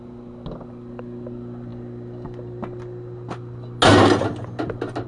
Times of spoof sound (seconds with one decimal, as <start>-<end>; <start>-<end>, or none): none